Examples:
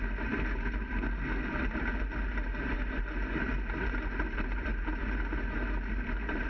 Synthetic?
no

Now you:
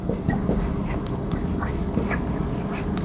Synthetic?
yes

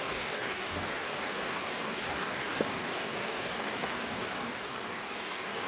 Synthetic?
yes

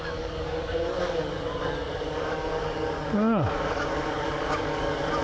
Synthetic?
yes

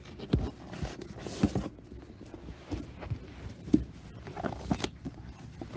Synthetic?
no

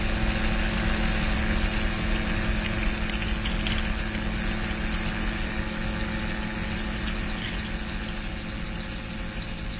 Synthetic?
no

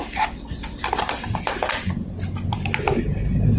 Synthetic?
no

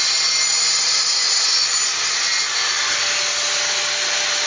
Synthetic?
no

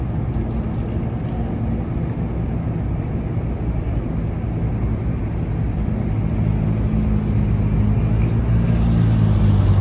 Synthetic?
no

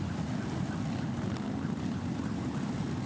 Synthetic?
no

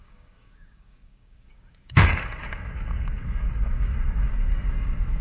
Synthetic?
yes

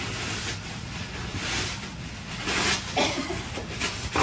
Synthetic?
no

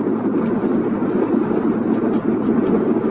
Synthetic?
no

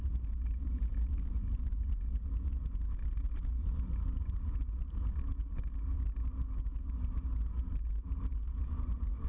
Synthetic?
no